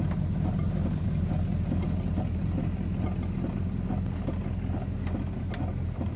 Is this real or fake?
real